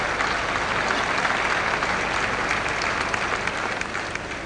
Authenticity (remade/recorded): recorded